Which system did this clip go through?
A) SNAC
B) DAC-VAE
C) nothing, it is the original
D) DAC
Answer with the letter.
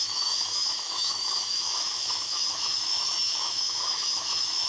B